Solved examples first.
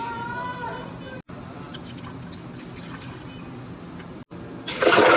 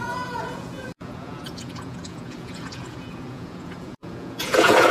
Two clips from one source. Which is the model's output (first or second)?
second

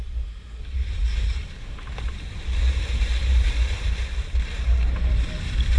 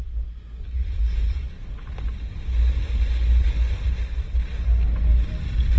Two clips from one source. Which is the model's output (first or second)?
first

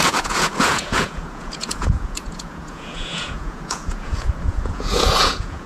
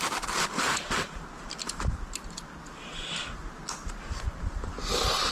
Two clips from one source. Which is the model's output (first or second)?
first